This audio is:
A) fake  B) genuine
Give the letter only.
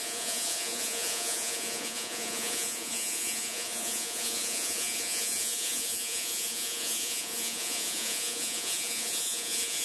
A